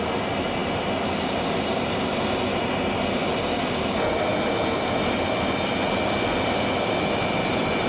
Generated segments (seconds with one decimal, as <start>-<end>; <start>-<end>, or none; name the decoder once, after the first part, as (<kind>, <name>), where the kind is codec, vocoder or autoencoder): none

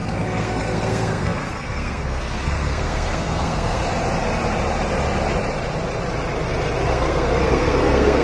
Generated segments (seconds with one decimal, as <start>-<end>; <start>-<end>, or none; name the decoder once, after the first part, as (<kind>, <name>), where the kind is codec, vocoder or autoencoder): 0.0-3.8 (codec, SNAC); 6.9-8.2

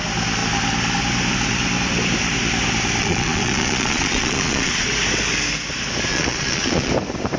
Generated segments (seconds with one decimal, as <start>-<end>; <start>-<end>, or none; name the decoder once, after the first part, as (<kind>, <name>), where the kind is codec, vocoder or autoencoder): 3.0-4.9 (vocoder, Vocos); 6.1-6.9

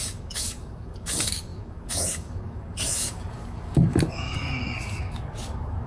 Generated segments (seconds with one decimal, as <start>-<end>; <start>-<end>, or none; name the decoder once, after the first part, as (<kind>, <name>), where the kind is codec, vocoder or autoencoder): 0.0-5.9 (codec, DAC)

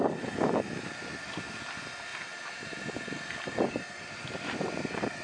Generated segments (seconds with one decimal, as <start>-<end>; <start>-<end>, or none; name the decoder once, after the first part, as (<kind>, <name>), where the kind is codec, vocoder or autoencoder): none